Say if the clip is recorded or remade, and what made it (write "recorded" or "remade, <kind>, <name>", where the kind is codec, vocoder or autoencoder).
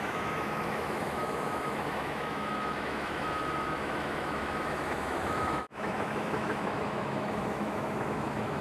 remade, autoencoder, DAC-VAE